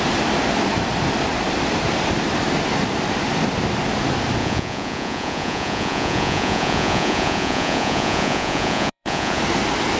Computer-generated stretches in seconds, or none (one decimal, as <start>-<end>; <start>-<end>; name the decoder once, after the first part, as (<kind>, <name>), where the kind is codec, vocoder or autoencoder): 4.4-9.4 (vocoder, Vocos)